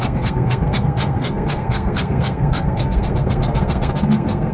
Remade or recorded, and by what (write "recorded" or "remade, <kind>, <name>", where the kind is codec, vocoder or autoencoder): remade, codec, SNAC